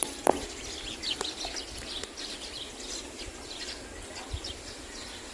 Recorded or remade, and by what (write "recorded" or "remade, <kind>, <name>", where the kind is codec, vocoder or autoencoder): recorded